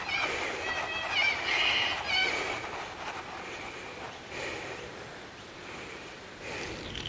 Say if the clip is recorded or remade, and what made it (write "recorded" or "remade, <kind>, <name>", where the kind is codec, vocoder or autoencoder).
recorded